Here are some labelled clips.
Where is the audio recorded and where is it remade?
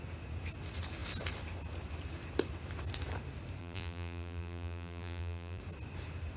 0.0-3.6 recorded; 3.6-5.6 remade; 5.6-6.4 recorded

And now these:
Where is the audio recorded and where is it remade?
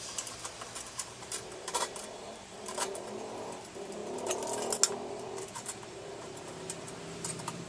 0.0-4.0 remade; 4.0-5.1 recorded; 5.1-6.1 remade; 6.1-7.0 recorded; 7.0-7.7 remade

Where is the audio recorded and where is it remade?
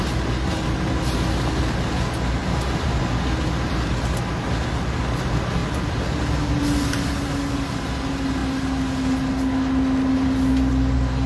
0.0-2.4 recorded; 2.4-3.0 remade; 3.0-11.3 recorded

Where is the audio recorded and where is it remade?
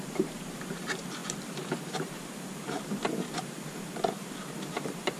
0.0-5.2 remade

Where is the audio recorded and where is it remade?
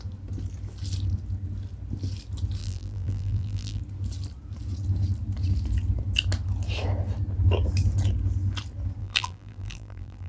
0.0-2.6 recorded; 2.6-3.8 remade; 3.8-9.0 recorded; 9.0-10.3 remade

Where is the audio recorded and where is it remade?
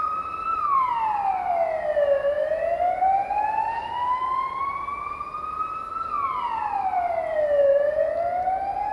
0.0-0.9 remade; 0.9-8.9 recorded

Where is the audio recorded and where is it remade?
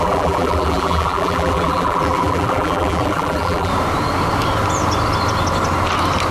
0.0-3.7 remade; 3.7-6.3 recorded